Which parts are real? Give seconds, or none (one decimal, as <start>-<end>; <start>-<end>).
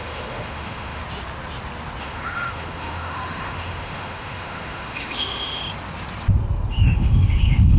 1.0-2.0; 5.6-6.7